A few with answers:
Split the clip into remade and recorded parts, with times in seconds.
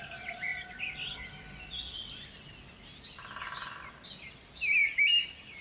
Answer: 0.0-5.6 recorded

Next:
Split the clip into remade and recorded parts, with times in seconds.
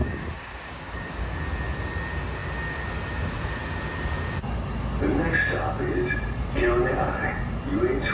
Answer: 0.0-1.2 remade; 1.2-8.1 recorded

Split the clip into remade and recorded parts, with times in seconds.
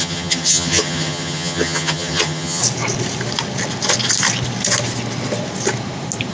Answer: 0.0-2.6 remade; 2.6-6.3 recorded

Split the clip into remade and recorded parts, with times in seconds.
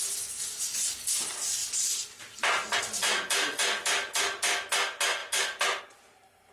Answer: 0.0-5.2 recorded; 5.2-5.8 remade; 5.8-6.5 recorded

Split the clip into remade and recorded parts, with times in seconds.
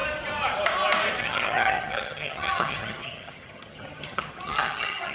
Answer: 0.0-1.2 recorded; 1.2-5.1 remade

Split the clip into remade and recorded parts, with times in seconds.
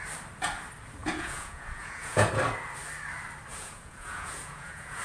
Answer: 0.0-1.0 recorded; 1.0-2.3 remade; 2.3-3.5 recorded; 3.5-5.0 remade